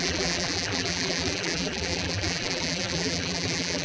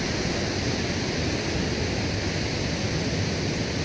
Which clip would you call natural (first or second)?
second